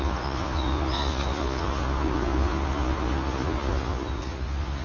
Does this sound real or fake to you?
fake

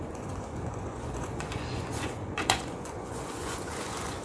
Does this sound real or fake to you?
fake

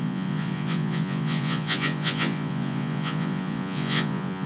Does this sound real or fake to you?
fake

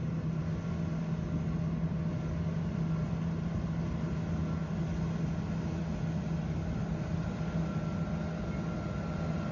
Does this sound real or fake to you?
real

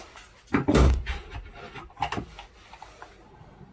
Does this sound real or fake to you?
real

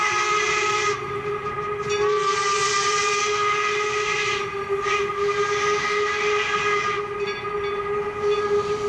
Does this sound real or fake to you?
real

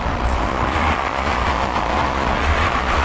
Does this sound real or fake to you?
fake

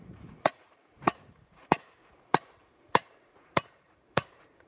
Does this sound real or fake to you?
fake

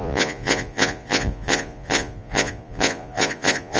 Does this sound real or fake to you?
fake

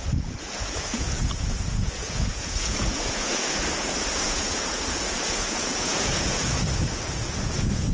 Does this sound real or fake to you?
fake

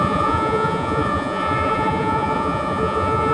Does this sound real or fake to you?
fake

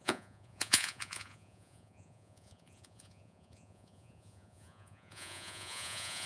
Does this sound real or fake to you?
fake